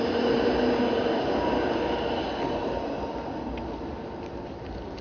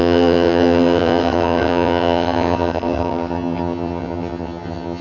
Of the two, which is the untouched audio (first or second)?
first